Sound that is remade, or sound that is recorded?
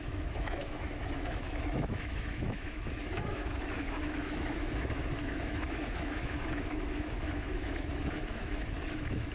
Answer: remade